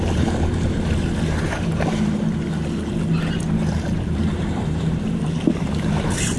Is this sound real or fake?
fake